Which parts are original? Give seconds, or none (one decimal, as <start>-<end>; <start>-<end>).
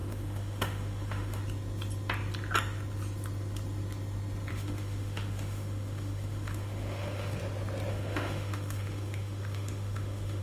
1.4-4.5; 7.4-7.9